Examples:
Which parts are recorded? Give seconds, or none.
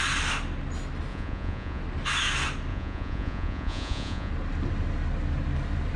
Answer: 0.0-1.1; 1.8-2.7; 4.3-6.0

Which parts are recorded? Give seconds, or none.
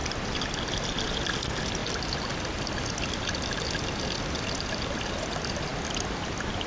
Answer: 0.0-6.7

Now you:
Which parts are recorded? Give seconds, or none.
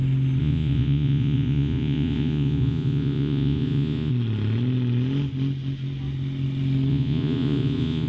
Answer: 0.0-0.4; 4.1-6.9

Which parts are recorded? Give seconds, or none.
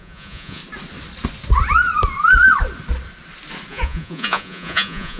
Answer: 0.6-3.7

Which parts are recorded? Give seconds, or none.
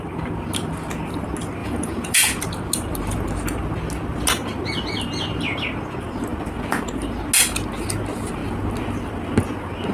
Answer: 0.0-1.6; 2.4-9.9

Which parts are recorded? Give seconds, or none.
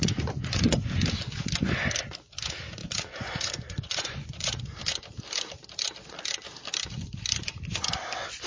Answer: 0.8-2.8; 4.6-8.5